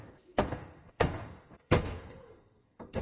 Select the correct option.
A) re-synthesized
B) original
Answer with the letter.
A